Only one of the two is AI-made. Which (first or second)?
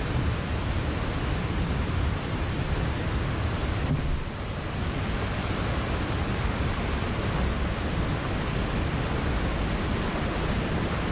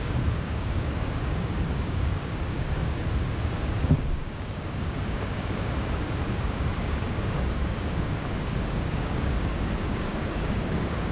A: second